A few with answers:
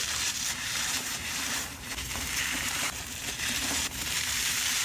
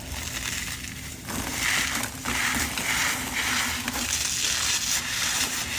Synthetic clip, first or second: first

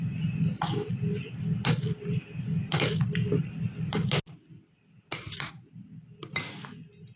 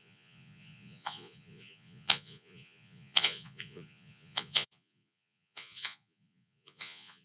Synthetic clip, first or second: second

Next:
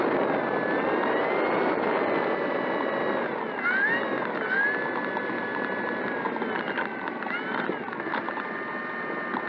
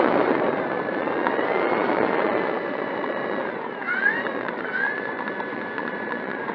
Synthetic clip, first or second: second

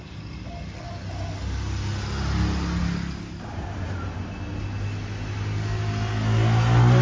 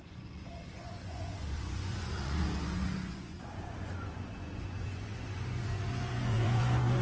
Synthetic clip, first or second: second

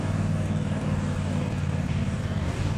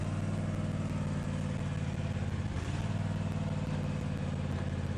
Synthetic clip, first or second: first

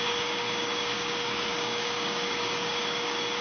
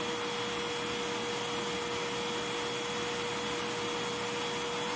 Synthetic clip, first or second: first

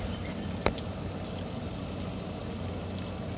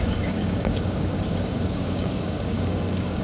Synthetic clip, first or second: second